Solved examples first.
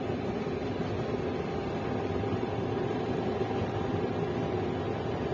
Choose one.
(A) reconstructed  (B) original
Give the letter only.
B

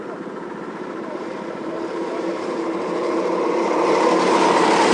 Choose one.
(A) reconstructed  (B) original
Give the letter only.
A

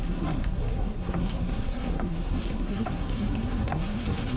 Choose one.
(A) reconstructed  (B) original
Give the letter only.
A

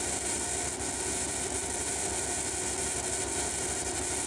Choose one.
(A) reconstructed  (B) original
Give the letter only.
B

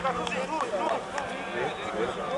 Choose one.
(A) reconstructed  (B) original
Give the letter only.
B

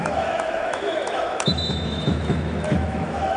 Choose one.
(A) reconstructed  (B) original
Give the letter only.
A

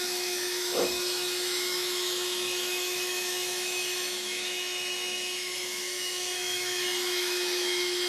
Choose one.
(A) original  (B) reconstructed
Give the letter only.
B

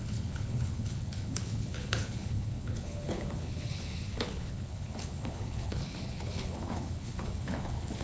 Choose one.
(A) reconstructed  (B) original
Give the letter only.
A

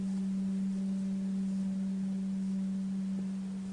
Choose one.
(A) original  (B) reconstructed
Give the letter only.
A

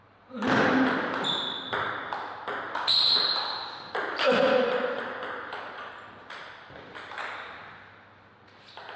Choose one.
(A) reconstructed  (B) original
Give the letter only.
A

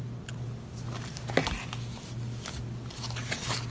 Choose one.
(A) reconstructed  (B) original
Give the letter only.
B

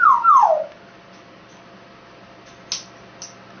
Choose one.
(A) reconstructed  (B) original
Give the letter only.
B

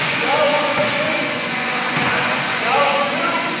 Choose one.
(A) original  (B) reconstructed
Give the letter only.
B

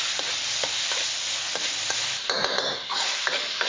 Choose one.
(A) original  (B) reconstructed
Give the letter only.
A